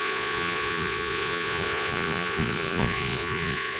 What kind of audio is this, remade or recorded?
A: remade